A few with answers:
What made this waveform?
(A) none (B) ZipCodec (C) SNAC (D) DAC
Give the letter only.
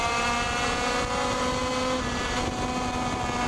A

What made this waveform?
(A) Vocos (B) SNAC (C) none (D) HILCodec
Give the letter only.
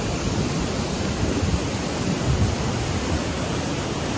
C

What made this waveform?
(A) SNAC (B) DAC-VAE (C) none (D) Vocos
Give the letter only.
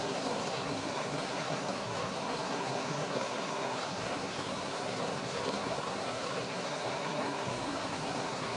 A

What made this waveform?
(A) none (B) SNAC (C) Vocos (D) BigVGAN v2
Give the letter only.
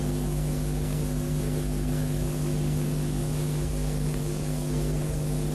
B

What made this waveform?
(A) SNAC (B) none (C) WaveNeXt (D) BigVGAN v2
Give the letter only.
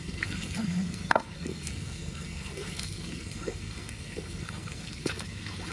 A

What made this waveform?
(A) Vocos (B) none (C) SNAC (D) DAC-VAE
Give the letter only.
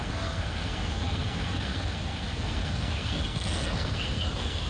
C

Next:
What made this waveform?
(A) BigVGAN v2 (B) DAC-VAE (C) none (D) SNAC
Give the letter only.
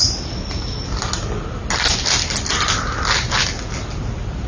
C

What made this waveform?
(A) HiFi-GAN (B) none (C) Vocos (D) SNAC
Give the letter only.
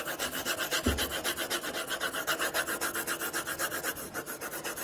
B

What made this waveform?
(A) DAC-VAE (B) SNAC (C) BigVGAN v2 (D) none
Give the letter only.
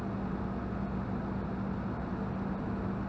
D